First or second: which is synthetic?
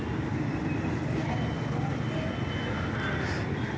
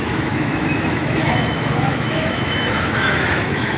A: second